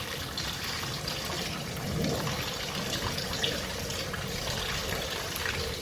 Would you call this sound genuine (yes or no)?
yes